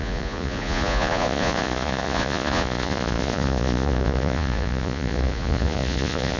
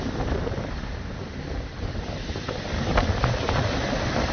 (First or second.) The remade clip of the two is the first